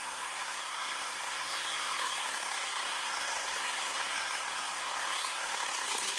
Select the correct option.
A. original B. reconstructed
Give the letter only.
B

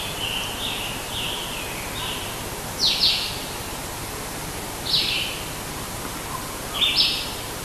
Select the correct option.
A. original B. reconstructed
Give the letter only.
A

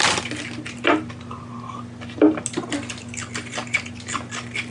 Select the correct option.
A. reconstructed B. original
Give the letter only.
B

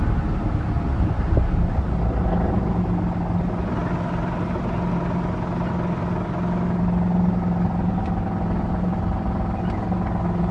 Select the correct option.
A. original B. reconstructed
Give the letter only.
A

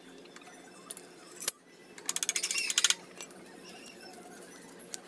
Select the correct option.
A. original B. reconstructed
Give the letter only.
A